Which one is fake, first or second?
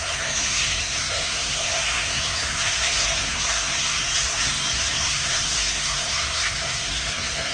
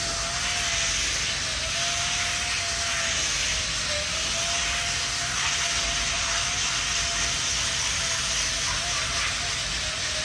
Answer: first